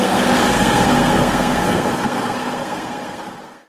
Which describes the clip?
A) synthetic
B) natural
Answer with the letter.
A